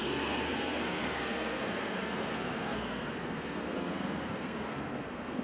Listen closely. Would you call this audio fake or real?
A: fake